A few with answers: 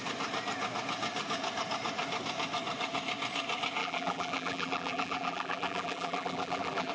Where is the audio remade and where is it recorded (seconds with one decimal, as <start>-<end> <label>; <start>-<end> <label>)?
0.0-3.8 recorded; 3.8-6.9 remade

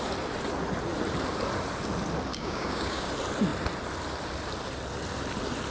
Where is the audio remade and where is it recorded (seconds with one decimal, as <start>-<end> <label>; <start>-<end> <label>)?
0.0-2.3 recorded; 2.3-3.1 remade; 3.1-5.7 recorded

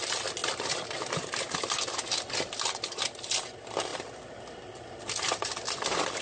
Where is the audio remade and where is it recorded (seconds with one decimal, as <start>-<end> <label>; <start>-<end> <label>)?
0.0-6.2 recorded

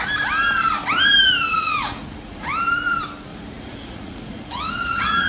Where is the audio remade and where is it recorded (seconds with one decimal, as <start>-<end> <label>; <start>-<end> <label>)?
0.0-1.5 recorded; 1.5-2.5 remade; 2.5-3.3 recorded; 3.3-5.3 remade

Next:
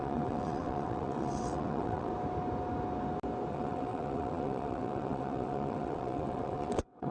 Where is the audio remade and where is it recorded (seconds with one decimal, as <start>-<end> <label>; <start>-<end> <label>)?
0.0-2.1 remade; 2.1-3.5 recorded; 3.5-7.1 remade

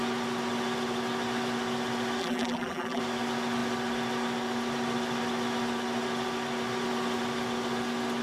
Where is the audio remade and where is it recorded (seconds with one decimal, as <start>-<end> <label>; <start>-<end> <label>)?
0.0-2.2 recorded; 2.2-3.0 remade; 3.0-8.2 recorded

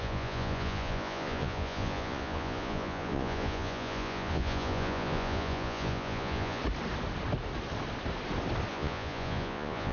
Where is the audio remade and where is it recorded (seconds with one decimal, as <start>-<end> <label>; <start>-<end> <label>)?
0.0-6.6 remade; 6.6-8.7 recorded; 8.7-9.9 remade

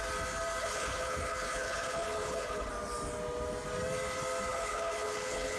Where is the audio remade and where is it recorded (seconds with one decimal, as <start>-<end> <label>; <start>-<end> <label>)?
0.0-0.6 recorded; 0.6-2.7 remade; 2.7-4.5 recorded; 4.5-5.6 remade